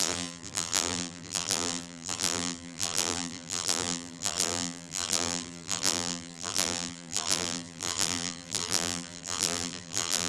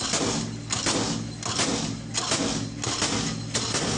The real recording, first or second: second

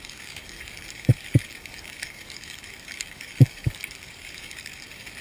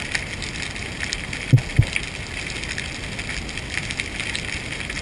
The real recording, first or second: second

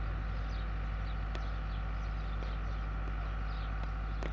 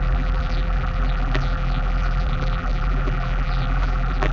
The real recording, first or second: first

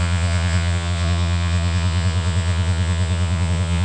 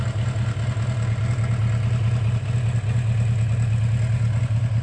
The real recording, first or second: second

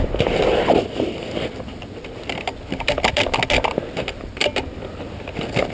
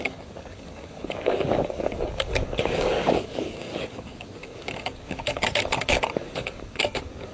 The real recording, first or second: first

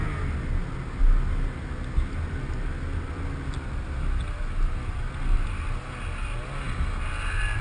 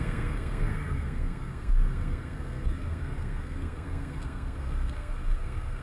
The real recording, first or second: first